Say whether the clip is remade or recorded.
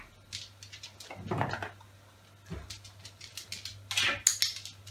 recorded